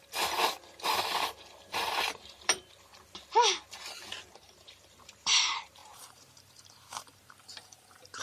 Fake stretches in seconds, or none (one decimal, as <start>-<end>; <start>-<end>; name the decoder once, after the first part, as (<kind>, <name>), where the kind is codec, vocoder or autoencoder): 0.0-2.9 (vocoder, BigVGAN v2); 4.3-8.2